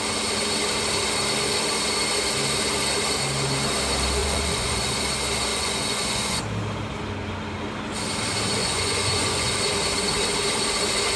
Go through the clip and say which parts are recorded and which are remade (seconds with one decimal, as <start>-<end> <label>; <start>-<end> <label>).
0.0-4.2 recorded; 4.2-5.0 remade; 5.0-5.5 recorded; 5.5-6.4 remade; 6.4-8.6 recorded; 8.6-9.6 remade; 9.6-11.2 recorded